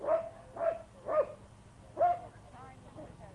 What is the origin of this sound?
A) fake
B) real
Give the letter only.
B